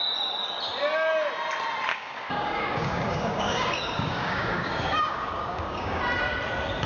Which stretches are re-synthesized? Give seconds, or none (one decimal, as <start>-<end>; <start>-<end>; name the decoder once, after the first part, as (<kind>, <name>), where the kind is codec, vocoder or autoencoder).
1.9-6.0 (codec, DAC)

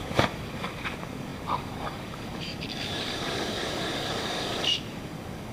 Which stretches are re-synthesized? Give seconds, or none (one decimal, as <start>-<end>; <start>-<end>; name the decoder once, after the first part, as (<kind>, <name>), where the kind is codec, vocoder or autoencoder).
0.0-5.5 (codec, DAC)